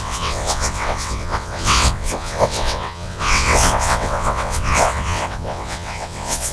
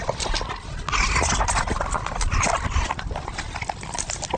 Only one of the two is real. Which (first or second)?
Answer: second